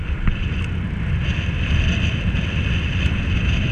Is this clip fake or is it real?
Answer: real